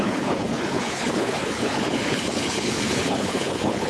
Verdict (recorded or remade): remade